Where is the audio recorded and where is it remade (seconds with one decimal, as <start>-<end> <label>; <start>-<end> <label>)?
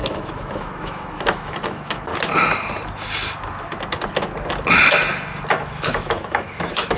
0.0-2.1 remade; 2.1-5.5 recorded; 5.5-7.0 remade